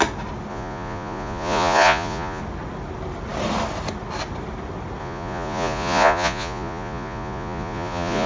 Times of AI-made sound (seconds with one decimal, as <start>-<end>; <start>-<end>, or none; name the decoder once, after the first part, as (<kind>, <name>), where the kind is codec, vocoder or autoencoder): 0.5-2.4 (vocoder, Vocos); 5.0-8.3